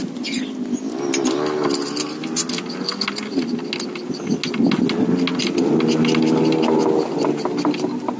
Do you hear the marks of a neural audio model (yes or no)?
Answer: no